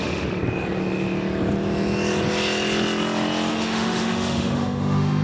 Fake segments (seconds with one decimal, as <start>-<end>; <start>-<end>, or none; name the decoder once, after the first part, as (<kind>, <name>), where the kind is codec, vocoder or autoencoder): 0.0-0.4 (autoencoder, DAC-VAE); 3.5-5.2